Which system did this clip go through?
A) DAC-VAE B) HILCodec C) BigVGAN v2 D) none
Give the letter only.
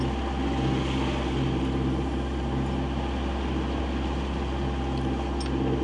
D